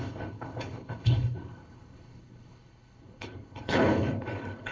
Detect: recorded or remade remade